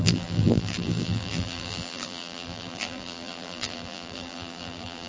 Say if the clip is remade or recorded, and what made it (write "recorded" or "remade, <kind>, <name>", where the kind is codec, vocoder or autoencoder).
remade, vocoder, BigVGAN v2